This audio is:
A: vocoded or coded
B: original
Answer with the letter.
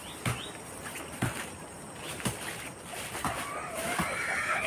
B